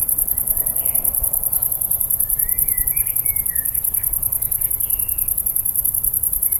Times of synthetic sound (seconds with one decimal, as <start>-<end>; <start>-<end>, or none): 0.0-3.3; 5.4-6.6